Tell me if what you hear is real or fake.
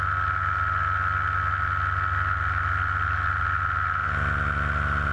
real